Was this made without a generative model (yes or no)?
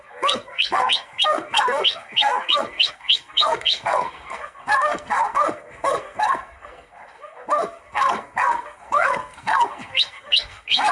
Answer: no